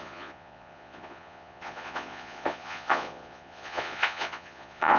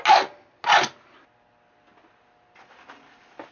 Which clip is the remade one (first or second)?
first